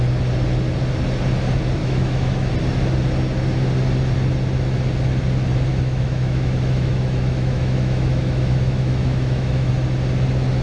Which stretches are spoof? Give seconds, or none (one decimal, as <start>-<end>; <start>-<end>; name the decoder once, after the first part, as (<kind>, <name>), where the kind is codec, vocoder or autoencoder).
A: 1.8-2.5 (autoencoder, DAC-VAE); 5.7-9.7